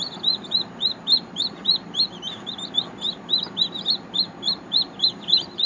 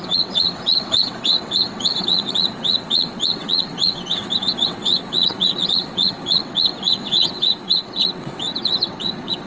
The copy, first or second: second